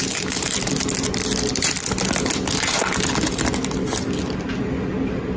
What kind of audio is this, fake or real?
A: real